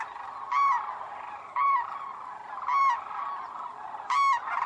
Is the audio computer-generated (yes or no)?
no